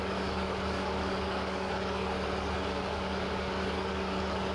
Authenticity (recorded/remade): remade